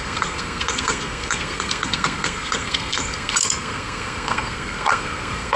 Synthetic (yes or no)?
yes